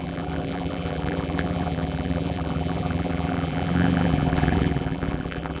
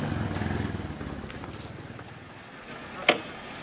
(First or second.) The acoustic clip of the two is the second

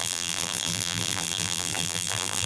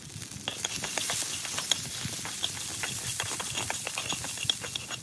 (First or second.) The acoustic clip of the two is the second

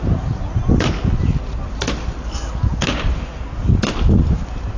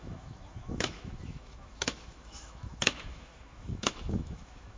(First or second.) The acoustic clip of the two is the first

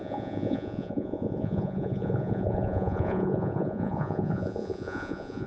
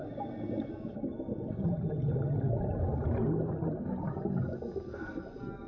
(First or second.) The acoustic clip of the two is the second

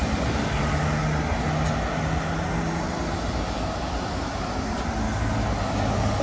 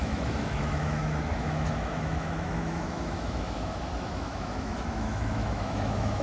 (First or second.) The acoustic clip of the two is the first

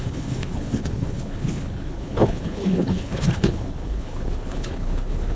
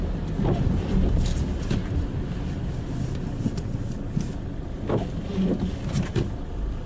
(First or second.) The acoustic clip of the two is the second